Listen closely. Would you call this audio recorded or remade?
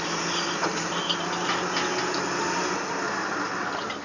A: remade